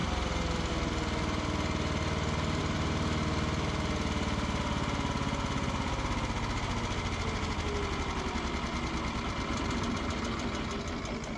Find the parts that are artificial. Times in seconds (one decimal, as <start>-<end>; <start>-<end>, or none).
none